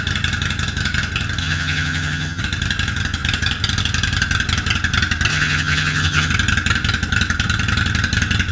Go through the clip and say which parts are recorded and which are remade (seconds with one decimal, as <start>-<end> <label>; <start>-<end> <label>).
0.0-1.4 recorded; 1.4-2.4 remade; 2.4-5.3 recorded; 5.3-6.3 remade; 6.3-8.5 recorded